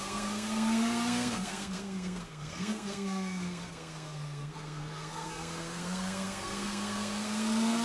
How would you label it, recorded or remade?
remade